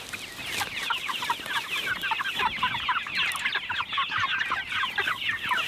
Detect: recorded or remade recorded